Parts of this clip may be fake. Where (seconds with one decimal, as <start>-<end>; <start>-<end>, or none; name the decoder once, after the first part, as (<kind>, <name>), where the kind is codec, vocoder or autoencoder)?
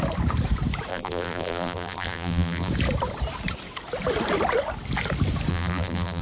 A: 0.9-2.7 (vocoder, BigVGAN v2); 5.5-6.2